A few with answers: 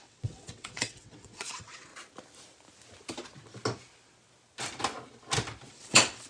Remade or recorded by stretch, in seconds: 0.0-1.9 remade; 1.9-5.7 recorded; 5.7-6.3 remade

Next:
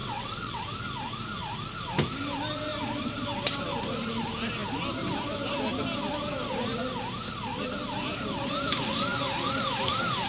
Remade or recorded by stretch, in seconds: 0.0-0.6 remade; 0.6-10.3 recorded

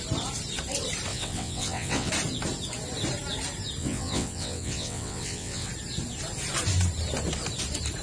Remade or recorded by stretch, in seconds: 0.0-1.1 recorded; 1.1-2.1 remade; 2.1-3.8 recorded; 3.8-5.7 remade; 5.7-8.0 recorded